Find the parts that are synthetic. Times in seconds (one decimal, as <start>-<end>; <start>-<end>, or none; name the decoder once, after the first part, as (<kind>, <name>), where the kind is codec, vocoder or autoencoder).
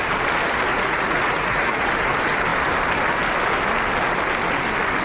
0.7-1.9 (vocoder, Vocos)